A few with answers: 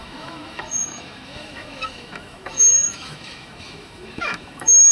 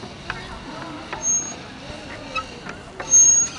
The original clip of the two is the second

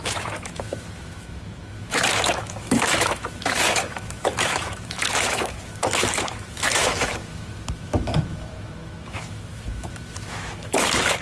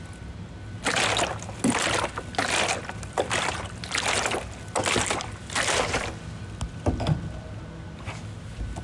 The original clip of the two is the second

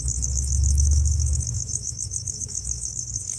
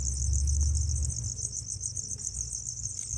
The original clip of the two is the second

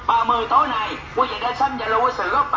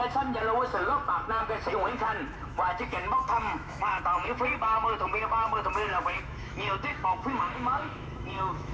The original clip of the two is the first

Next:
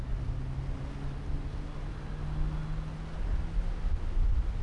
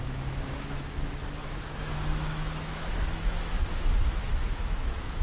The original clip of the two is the first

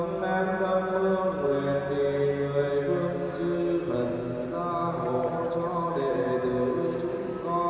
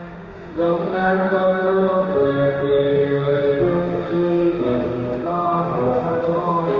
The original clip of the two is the first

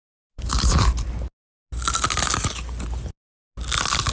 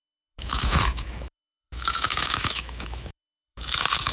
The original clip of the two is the first